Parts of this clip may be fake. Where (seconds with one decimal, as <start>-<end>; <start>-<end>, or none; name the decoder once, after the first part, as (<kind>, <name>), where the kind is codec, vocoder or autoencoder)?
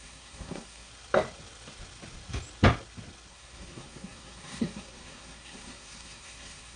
0.0-0.9 (codec, SNAC); 3.3-6.8